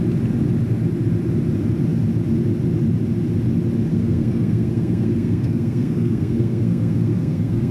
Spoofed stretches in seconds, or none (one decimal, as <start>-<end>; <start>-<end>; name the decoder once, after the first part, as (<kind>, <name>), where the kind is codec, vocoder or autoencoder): 3.9-7.7 (codec, SNAC)